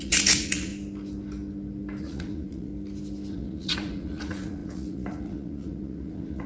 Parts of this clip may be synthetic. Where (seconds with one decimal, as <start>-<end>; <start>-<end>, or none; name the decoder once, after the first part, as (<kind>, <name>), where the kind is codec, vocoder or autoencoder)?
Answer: 0.0-0.7 (vocoder, Vocos); 2.0-2.7; 3.3-6.5